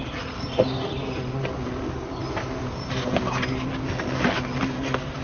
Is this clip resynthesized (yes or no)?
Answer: no